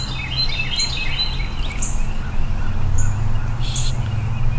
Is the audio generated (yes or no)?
no